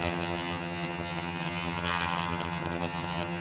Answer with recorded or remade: remade